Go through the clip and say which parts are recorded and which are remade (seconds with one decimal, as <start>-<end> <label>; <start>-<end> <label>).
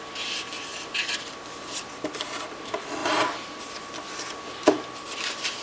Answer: 0.0-3.0 recorded; 3.0-3.6 remade; 3.6-5.6 recorded